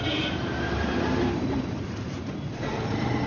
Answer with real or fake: fake